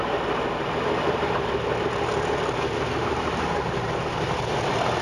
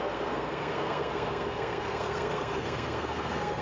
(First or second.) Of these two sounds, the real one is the first